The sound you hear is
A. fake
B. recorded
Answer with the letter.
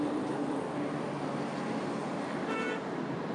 B